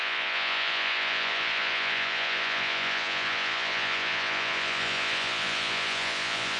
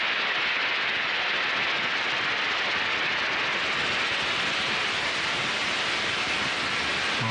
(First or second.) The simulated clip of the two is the first